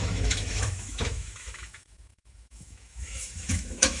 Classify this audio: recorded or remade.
remade